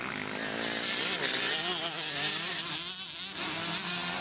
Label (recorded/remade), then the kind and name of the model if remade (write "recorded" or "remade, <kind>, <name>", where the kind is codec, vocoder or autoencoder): recorded